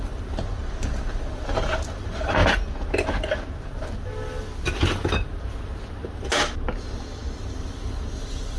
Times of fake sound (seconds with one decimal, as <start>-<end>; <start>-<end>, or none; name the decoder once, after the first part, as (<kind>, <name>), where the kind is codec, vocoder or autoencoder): none